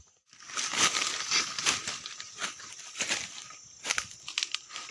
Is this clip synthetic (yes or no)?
no